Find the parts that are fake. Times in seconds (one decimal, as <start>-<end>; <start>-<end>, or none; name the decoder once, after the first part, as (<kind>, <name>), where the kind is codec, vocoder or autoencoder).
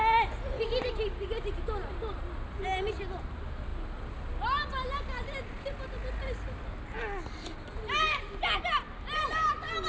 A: none